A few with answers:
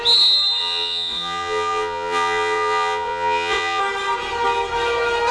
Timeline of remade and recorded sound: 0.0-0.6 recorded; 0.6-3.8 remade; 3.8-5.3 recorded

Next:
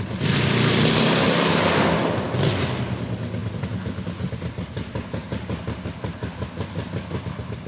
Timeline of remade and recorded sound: 0.0-7.7 recorded

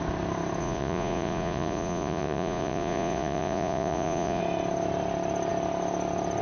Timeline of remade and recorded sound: 0.0-0.6 recorded; 0.6-4.4 remade; 4.4-6.4 recorded

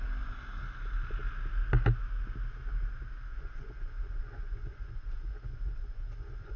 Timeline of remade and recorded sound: 0.0-3.3 recorded; 3.3-6.6 remade

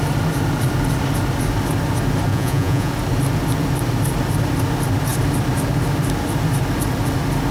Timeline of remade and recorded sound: 0.0-2.3 recorded; 2.3-2.9 remade; 2.9-7.5 recorded

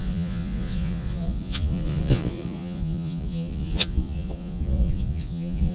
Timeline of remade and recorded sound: 0.0-5.7 remade

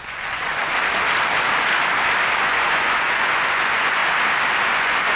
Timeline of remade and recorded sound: 0.0-0.8 remade; 0.8-2.4 recorded; 2.4-4.0 remade; 4.0-4.7 recorded; 4.7-5.2 remade

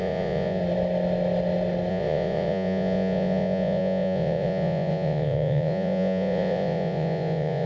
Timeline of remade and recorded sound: 0.0-0.6 remade; 0.6-1.9 recorded; 1.9-7.7 remade